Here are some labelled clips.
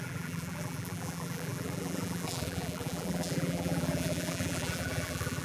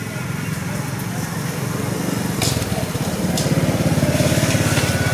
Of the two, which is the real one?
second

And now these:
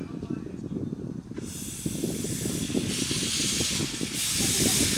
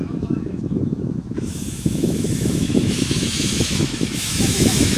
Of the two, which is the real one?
first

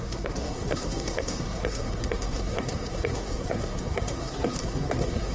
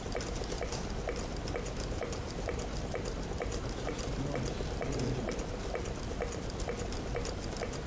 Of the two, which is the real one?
second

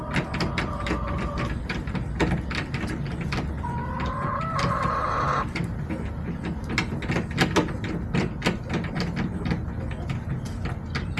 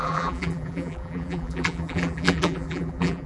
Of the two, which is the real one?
first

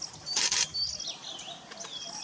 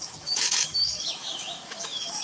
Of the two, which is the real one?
first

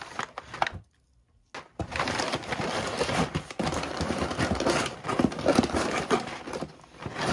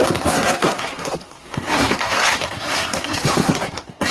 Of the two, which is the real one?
first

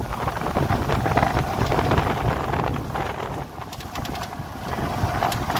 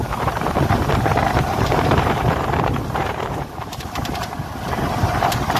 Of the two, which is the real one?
first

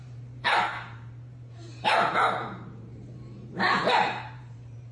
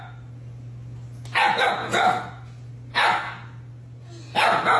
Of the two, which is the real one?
second